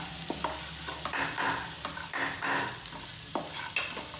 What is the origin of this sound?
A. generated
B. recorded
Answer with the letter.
B